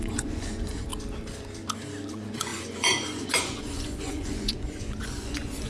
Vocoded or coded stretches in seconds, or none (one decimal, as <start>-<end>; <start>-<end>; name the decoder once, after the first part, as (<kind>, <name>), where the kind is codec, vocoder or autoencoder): 0.0-0.9 (vocoder, Vocos); 2.1-5.7